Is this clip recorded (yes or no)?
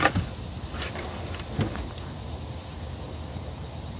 yes